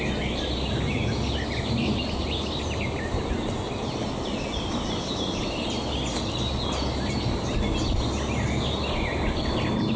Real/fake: real